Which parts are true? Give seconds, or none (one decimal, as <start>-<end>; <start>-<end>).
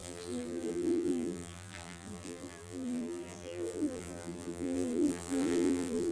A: none